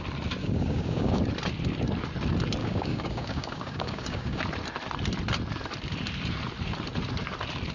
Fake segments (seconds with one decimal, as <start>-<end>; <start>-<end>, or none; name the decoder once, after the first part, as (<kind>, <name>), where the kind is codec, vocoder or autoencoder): 0.4-1.2 (codec, DAC); 2.6-4.4